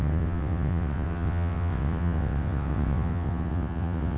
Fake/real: fake